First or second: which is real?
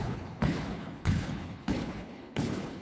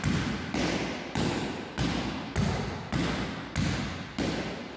second